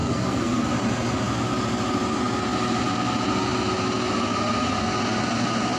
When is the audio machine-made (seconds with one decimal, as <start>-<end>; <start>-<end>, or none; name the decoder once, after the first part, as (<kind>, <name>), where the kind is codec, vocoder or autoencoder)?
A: 0.0-0.7 (codec, SNAC)